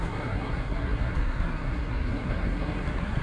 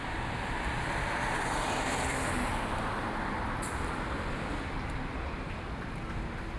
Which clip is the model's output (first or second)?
first